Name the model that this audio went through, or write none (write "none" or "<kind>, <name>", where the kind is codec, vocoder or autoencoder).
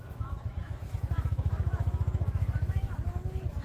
autoencoder, DAC-VAE